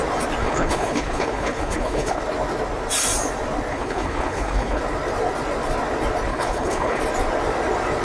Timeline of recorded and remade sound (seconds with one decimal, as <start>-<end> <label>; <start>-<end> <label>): 0.0-0.4 recorded; 0.4-2.2 remade; 2.2-3.7 recorded; 3.7-4.8 remade; 4.8-6.3 recorded; 6.3-7.0 remade; 7.0-8.0 recorded